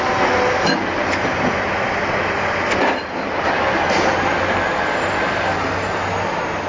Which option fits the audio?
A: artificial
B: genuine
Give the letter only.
B